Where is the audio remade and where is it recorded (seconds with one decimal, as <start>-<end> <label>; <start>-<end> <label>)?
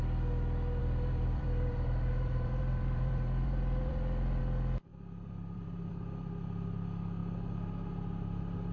0.0-0.8 recorded; 0.8-4.4 remade; 4.4-4.9 recorded; 4.9-5.9 remade; 5.9-8.7 recorded